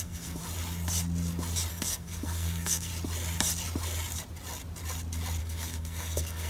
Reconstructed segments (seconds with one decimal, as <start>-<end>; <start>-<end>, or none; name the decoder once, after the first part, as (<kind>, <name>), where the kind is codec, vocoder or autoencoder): 0.0-0.4 (codec, SNAC); 1.7-2.9; 5.4-6.5